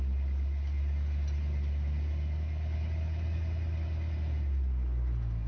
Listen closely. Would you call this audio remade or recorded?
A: recorded